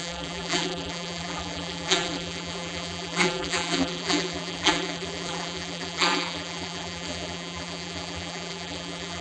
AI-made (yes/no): yes